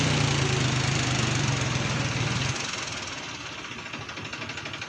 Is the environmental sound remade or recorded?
recorded